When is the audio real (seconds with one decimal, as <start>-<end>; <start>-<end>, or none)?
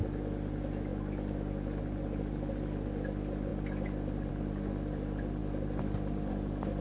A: 0.0-3.5; 4.3-5.4; 6.3-6.8